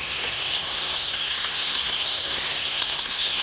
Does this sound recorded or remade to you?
remade